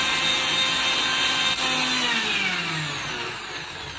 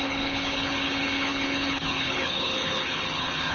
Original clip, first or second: first